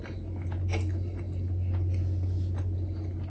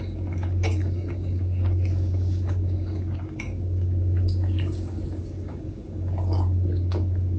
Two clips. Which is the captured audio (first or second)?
first